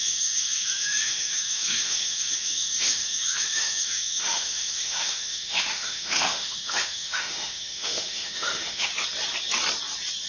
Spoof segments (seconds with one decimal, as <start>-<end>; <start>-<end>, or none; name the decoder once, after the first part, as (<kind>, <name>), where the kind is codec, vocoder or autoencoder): 0.0-8.9 (autoencoder, DAC-VAE)